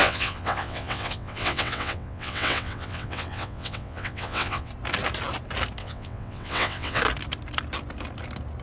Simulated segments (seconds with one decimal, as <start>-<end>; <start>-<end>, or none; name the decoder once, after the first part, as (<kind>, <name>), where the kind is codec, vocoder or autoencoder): 0.0-4.7 (vocoder, WaveNeXt); 5.8-7.0